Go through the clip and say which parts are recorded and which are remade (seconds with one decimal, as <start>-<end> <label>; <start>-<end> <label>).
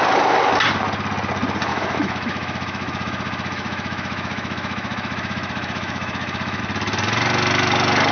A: 0.0-1.7 recorded; 1.7-6.6 remade; 6.6-8.1 recorded